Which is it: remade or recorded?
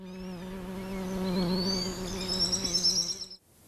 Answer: recorded